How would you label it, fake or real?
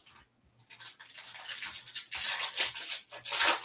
real